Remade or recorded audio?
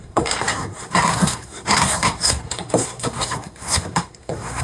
remade